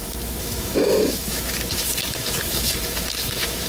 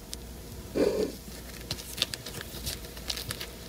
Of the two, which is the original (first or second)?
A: second